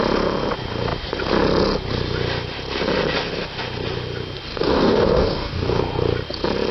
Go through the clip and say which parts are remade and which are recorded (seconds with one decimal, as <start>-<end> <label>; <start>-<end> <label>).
0.0-4.5 recorded; 4.5-5.8 remade; 5.8-6.7 recorded